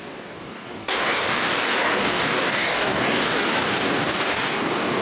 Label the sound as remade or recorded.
remade